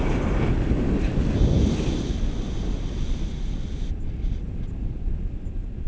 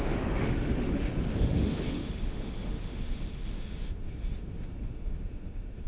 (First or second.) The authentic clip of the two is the first